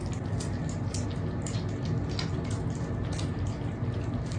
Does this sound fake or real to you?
real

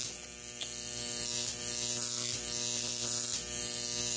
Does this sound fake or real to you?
real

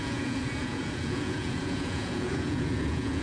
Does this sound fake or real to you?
fake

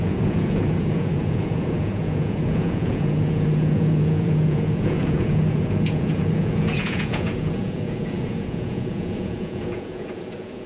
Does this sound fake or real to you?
fake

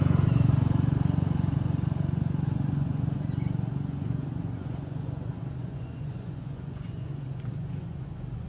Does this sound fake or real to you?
fake